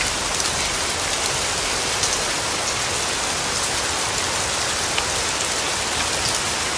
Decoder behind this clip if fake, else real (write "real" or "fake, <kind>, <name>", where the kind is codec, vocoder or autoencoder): real